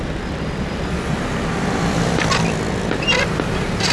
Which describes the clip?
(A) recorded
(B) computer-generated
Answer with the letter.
A